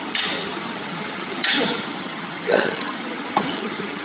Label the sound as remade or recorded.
remade